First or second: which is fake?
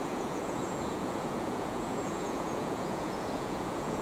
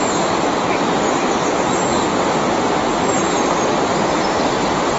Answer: first